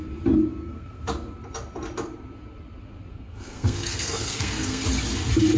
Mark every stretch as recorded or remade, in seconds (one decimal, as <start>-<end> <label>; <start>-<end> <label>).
0.0-0.5 recorded; 0.5-1.0 remade; 1.0-3.1 recorded; 3.1-4.8 remade; 4.8-5.6 recorded